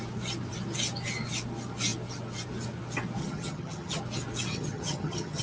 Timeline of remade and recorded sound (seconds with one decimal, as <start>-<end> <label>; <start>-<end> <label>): 0.0-3.2 recorded; 3.2-4.0 remade; 4.0-4.5 recorded; 4.5-5.4 remade